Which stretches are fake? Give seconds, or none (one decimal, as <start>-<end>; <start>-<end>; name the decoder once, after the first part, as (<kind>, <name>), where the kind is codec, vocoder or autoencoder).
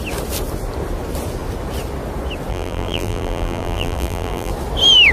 2.5-4.5 (vocoder, BigVGAN v2)